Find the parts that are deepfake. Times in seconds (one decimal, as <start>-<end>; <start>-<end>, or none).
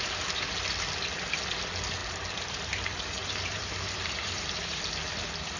2.0-4.9